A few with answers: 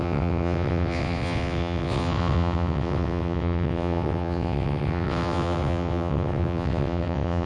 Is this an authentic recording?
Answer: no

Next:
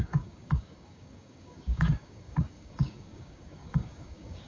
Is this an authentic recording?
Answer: no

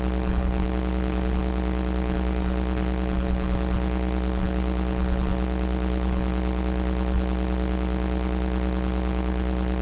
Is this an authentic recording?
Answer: no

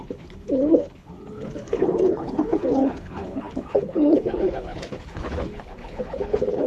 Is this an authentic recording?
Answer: no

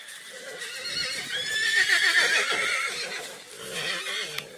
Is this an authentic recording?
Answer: no